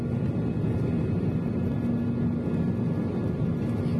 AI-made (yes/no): no